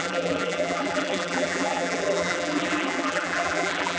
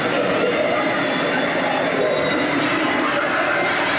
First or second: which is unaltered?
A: second